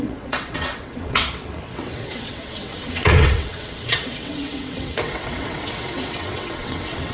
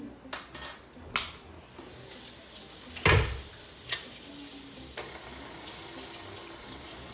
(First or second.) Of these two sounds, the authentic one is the second